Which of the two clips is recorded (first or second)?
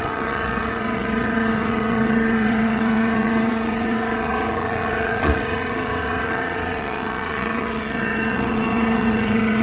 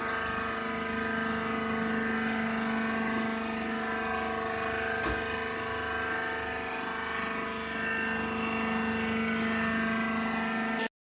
second